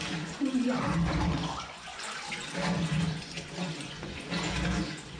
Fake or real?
fake